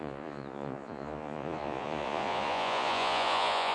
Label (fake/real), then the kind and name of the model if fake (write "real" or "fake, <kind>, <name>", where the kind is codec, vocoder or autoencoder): fake, vocoder, Vocos